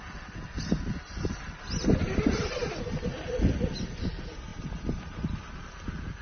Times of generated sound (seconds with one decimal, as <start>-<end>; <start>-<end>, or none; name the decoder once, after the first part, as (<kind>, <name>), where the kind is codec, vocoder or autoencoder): 4.5-5.6 (vocoder, BigVGAN v2)